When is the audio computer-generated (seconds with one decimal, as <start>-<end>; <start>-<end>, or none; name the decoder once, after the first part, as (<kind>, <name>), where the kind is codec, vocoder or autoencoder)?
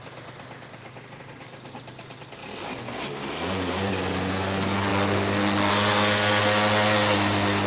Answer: 2.4-3.9 (vocoder, BigVGAN v2)